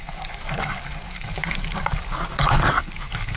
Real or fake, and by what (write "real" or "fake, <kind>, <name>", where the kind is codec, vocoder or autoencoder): fake, codec, DAC